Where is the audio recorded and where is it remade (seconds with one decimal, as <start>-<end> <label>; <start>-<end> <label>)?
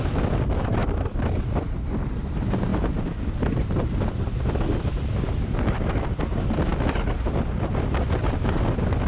0.0-0.8 recorded; 0.8-2.0 remade; 2.0-2.7 recorded; 2.7-4.9 remade; 4.9-9.1 recorded